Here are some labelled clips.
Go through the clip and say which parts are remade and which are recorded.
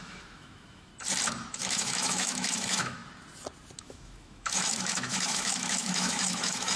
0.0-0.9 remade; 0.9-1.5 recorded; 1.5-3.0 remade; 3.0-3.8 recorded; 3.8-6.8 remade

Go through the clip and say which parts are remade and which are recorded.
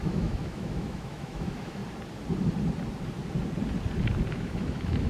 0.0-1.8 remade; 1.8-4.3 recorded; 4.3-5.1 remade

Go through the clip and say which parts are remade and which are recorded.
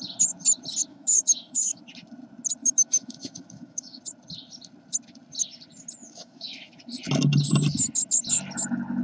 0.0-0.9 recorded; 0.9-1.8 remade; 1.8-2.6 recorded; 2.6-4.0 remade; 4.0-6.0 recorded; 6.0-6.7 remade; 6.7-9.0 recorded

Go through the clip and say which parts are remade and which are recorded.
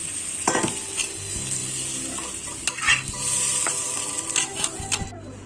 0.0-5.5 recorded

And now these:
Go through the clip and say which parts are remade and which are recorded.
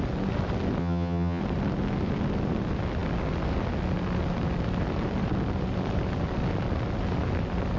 0.0-0.8 recorded; 0.8-1.4 remade; 1.4-7.8 recorded